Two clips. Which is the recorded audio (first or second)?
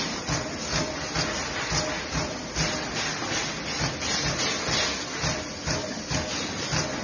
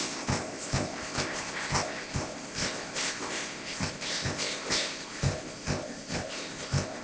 first